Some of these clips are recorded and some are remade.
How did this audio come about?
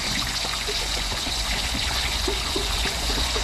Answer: remade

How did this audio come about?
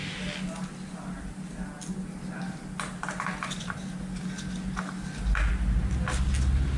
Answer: recorded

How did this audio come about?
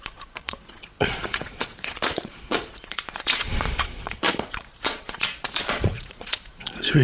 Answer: remade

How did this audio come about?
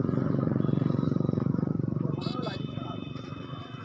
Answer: remade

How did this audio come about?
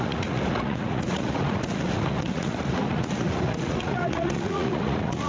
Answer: remade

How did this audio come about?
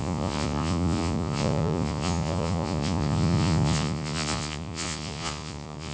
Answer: remade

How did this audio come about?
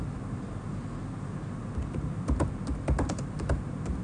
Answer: recorded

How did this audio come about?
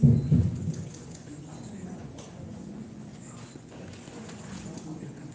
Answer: remade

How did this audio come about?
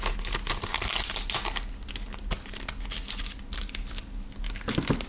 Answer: recorded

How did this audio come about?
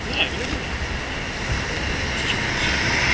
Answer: recorded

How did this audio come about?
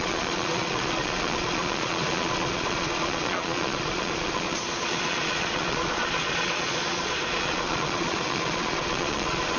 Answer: remade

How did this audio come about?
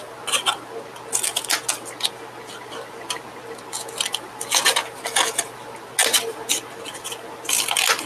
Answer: recorded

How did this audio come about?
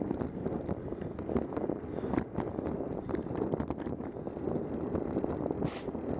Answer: recorded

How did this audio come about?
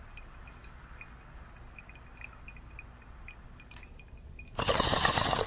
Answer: recorded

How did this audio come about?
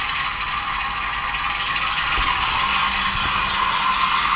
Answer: recorded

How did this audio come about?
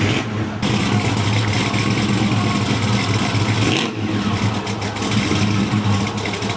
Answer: recorded